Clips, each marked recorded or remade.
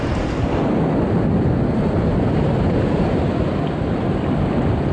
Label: recorded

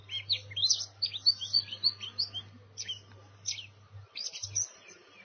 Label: recorded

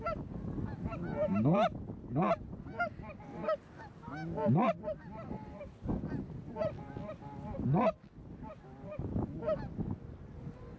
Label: recorded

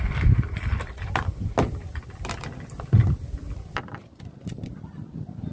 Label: remade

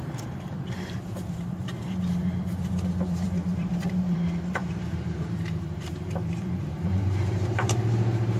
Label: remade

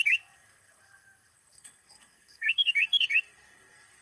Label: remade